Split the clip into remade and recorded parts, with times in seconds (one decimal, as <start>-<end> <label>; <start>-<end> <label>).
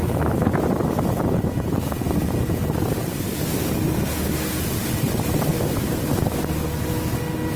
0.0-3.5 remade; 3.5-4.8 recorded; 4.8-6.4 remade; 6.4-7.6 recorded